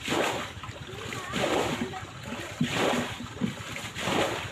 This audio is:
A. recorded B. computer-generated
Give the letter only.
A